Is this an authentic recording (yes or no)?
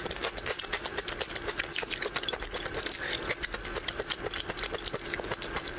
yes